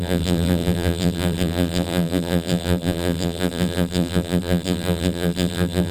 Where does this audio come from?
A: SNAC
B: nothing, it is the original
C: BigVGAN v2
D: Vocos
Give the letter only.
C